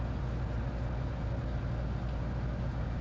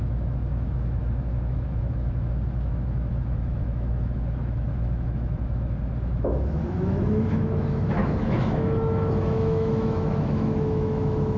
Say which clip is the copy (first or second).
second